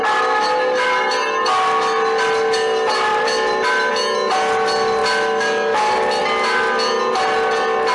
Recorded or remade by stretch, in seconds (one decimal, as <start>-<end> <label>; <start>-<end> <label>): 0.0-3.1 recorded; 3.1-3.9 remade; 3.9-7.9 recorded